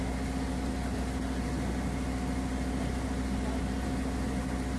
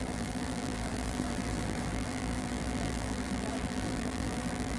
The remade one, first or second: second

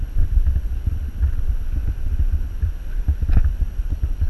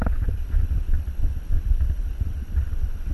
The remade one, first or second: first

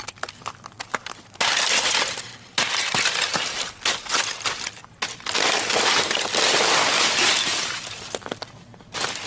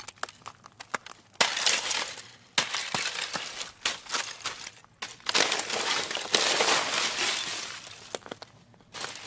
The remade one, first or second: first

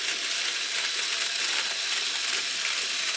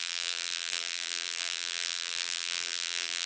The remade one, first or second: second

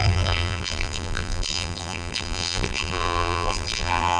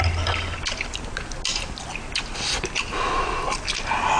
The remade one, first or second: first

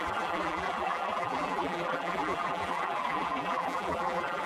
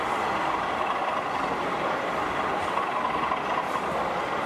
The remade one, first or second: first